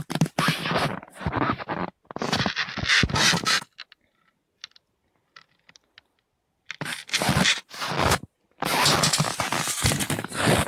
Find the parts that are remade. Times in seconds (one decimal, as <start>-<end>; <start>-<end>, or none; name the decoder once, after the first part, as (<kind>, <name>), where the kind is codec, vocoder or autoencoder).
none